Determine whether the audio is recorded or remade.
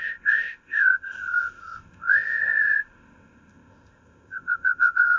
remade